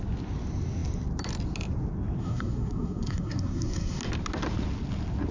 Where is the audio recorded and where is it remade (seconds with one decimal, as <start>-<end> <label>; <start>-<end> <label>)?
0.0-2.2 recorded; 2.2-4.0 remade; 4.0-5.3 recorded